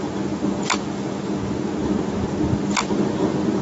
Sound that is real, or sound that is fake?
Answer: real